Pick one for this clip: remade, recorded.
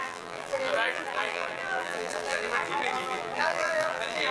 remade